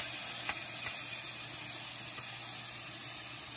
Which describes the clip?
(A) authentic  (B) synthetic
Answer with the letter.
A